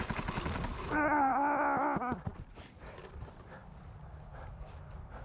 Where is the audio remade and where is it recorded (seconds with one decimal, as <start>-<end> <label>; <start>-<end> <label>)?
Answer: 0.0-0.7 recorded; 0.7-1.3 remade; 1.3-5.2 recorded

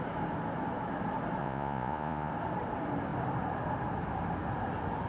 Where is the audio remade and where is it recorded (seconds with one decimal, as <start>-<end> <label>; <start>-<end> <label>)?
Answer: 0.0-1.4 recorded; 1.4-2.3 remade; 2.3-5.1 recorded

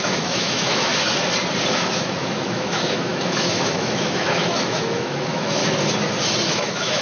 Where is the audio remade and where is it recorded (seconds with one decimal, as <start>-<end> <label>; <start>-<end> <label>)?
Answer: 0.0-0.9 remade; 0.9-1.7 recorded; 1.7-5.6 remade; 5.6-6.5 recorded; 6.5-7.0 remade

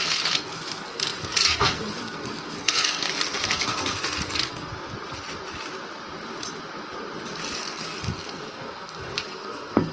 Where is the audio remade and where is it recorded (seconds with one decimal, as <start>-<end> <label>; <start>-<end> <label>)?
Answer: 0.0-4.7 remade; 4.7-7.6 recorded; 7.6-9.9 remade

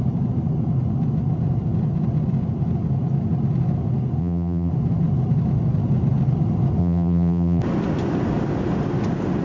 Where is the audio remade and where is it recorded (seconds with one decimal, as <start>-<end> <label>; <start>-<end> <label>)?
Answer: 0.0-4.2 recorded; 4.2-4.7 remade; 4.7-6.8 recorded; 6.8-7.6 remade; 7.6-9.4 recorded

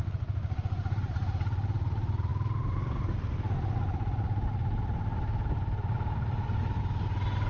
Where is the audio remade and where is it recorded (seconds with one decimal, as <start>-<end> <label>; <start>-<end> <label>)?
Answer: 0.0-7.5 recorded

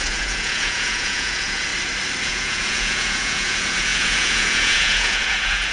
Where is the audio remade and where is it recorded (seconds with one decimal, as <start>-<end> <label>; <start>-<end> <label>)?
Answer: 0.0-1.7 remade; 1.7-2.2 recorded; 2.2-5.7 remade